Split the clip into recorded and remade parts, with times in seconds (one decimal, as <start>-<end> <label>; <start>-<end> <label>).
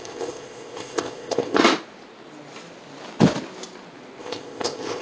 0.0-1.6 remade; 1.6-4.2 recorded; 4.2-5.0 remade